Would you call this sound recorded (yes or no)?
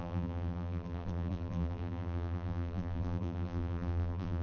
no